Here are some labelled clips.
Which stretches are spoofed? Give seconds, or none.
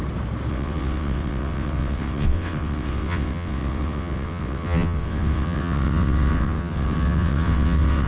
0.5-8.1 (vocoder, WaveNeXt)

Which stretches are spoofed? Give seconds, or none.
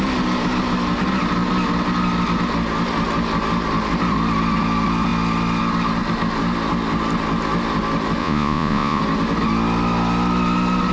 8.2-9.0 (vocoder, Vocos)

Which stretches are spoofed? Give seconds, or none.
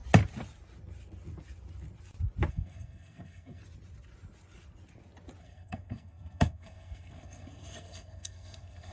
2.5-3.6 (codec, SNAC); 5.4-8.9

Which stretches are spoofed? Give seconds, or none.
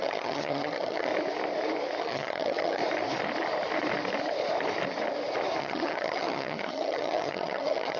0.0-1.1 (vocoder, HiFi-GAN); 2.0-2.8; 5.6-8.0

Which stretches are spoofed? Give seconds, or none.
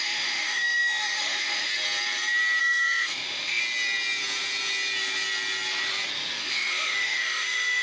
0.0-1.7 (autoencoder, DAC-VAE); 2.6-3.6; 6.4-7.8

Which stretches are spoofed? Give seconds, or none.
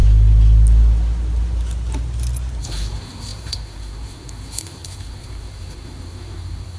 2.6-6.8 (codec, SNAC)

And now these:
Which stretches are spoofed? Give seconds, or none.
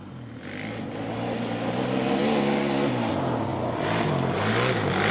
none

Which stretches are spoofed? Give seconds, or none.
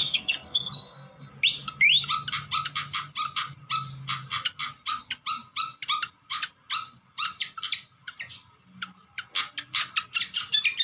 0.0-1.3 (codec, SNAC)